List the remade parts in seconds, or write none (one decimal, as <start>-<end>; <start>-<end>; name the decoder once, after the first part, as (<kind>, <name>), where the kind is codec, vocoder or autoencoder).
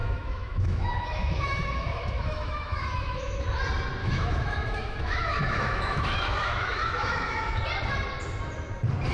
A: 0.0-3.4 (autoencoder, DAC-VAE); 4.0-7.6